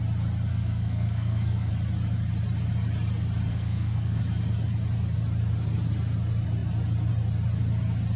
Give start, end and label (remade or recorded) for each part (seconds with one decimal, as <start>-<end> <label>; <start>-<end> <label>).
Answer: 0.0-0.5 recorded; 0.5-1.7 remade; 1.7-3.5 recorded; 3.5-4.2 remade; 4.2-8.2 recorded